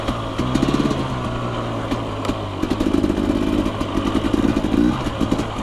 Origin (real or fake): real